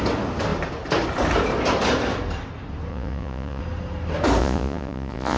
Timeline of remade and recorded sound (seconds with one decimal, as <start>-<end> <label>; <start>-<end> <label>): 0.0-2.9 recorded; 2.9-3.6 remade; 3.6-4.4 recorded; 4.4-5.4 remade